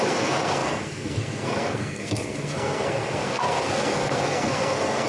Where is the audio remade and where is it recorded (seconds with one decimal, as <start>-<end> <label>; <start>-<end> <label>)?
0.0-5.1 remade